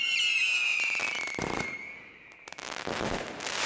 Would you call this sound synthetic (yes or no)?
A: yes